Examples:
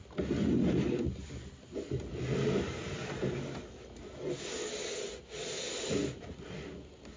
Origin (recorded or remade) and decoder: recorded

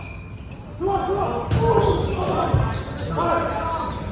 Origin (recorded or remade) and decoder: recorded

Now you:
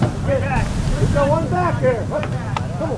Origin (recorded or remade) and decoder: recorded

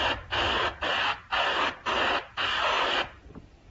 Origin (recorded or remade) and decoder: remade, vocoder, BigVGAN v2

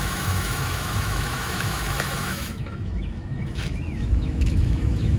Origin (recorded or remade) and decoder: remade, autoencoder, DAC-VAE